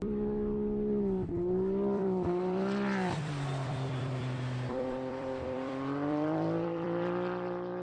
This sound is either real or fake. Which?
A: fake